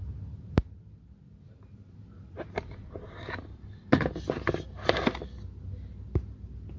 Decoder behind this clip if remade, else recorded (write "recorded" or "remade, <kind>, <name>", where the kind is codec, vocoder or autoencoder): recorded